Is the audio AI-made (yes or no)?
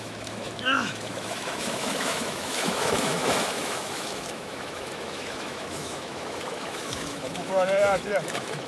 yes